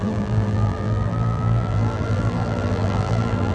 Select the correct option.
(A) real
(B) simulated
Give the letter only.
B